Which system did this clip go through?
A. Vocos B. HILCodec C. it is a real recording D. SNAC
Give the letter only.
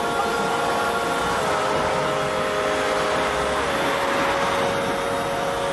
C